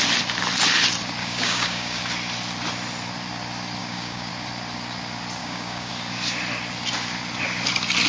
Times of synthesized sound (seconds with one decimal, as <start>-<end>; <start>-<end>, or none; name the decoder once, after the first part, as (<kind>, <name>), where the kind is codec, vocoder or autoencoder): 1.2-2.0 (codec, DAC); 3.8-4.3; 5.4-5.9